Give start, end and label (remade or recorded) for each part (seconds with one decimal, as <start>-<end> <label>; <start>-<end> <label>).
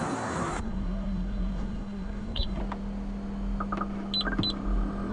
0.0-2.6 remade; 2.6-5.1 recorded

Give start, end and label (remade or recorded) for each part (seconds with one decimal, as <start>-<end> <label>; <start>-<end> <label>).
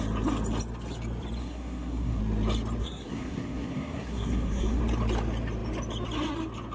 0.0-1.4 recorded; 1.4-2.2 remade; 2.2-2.8 recorded; 2.8-4.8 remade; 4.8-6.7 recorded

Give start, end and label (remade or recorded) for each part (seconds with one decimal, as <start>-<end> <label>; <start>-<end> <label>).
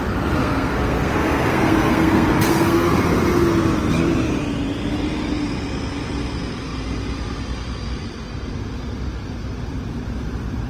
0.0-0.4 recorded; 0.4-2.9 remade; 2.9-10.7 recorded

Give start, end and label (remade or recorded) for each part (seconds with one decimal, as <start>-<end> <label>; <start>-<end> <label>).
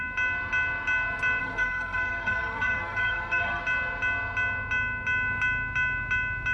0.0-1.4 recorded; 1.4-3.6 remade; 3.6-6.5 recorded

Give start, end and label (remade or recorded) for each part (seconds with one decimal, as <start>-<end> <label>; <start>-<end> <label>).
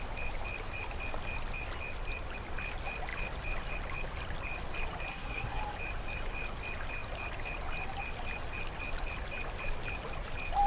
0.0-5.1 recorded; 5.1-5.6 remade; 5.6-10.7 recorded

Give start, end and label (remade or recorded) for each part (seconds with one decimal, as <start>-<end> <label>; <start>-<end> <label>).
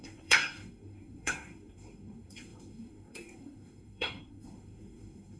0.0-5.4 remade